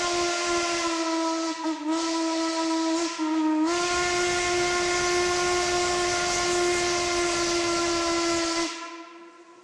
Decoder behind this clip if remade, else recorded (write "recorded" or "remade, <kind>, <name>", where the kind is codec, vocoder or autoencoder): recorded